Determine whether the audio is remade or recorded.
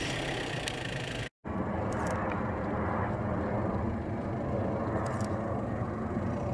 recorded